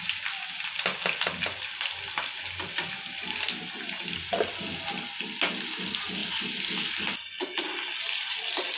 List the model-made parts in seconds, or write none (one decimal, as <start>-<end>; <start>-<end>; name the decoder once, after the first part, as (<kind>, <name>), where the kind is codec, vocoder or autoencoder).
none